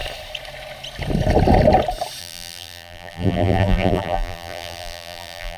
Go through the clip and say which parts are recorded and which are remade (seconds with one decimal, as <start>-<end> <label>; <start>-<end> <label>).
0.0-2.2 recorded; 2.2-5.6 remade